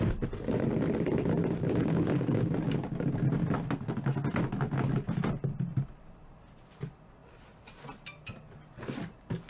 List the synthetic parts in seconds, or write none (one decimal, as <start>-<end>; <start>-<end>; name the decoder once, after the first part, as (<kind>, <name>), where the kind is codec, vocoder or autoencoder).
1.8-2.5 (codec, DAC)